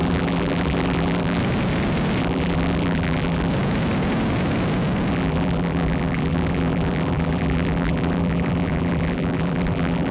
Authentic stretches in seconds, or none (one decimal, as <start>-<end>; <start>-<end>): 1.4-2.2; 3.5-5.1